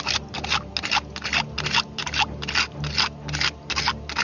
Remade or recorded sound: recorded